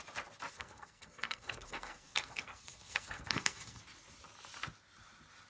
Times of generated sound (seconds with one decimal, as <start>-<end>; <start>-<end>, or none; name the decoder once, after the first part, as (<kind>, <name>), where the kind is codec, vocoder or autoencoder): 0.5-3.8 (codec, SNAC)